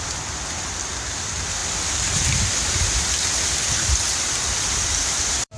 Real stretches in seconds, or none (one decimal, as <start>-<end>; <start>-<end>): none